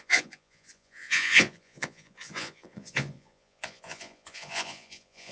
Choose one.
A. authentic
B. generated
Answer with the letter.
B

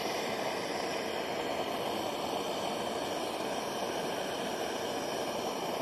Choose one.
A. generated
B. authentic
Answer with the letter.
B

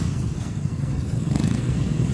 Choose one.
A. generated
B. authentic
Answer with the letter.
A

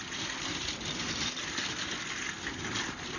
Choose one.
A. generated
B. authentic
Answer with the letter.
B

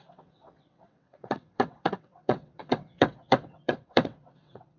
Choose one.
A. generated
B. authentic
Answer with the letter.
A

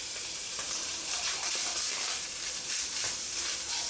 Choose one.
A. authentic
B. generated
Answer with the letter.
B